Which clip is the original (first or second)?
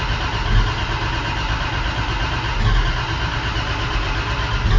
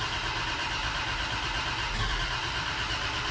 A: first